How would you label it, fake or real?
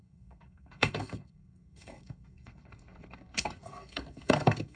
fake